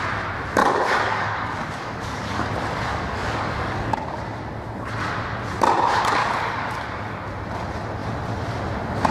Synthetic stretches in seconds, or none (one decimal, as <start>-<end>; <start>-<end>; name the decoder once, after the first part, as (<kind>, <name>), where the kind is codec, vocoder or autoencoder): 0.6-2.5 (codec, DAC); 2.9-4.2; 6.2-7.3

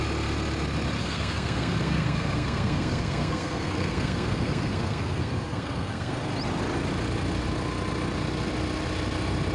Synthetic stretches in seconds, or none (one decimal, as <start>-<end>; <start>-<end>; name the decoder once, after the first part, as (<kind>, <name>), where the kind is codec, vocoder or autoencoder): 1.0-6.2 (codec, SNAC)

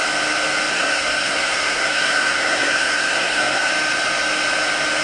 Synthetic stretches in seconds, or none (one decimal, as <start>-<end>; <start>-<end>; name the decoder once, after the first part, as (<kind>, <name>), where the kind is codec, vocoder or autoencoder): 0.7-3.7 (codec, SNAC)

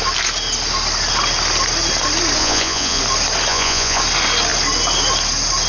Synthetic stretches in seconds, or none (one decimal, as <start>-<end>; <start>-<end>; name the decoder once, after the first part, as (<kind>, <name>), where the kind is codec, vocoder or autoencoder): 2.4-3.0 (vocoder, Vocos); 3.5-4.0

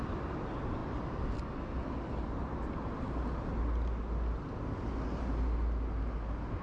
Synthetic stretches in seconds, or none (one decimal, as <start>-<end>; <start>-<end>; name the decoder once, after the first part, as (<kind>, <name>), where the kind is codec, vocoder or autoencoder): none

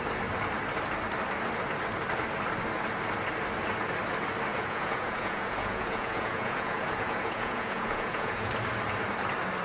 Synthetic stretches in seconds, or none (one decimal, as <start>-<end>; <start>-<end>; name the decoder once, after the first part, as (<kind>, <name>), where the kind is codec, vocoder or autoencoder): 4.5-8.5 (vocoder, Vocos)